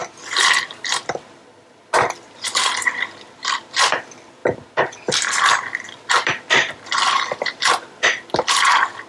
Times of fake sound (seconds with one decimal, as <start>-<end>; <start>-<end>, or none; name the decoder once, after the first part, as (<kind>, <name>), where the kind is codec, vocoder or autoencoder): 0.0-9.1 (vocoder, BigVGAN v2)